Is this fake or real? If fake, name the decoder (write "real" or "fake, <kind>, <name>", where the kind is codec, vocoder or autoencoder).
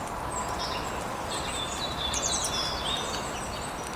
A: real